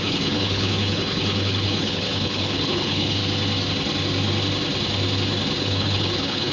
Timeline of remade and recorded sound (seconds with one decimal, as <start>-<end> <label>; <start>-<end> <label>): 0.0-3.2 remade; 3.2-5.6 recorded; 5.6-6.5 remade